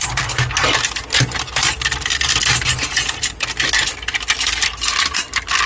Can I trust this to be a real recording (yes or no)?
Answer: yes